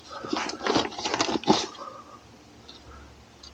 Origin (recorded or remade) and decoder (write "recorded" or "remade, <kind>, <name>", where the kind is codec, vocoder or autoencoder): recorded